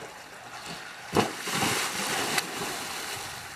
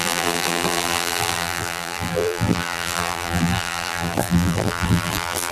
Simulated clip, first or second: second